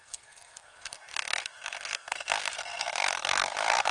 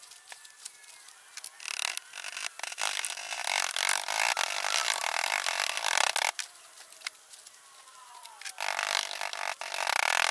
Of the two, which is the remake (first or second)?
first